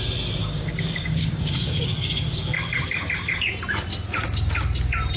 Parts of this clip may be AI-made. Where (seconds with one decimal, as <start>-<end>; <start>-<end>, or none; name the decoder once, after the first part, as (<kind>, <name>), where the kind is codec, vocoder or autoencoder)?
0.4-3.5 (codec, DAC)